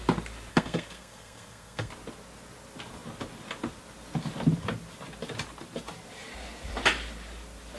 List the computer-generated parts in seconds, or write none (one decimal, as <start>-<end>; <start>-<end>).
0.5-1.9